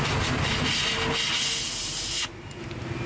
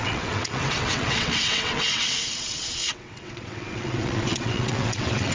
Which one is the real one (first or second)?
first